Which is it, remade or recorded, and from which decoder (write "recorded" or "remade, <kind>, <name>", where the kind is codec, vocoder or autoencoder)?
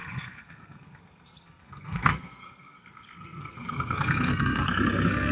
remade, codec, SNAC